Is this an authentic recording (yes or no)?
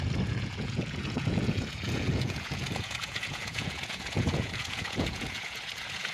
no